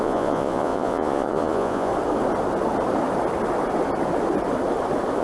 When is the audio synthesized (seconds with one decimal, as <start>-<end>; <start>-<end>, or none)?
0.0-1.9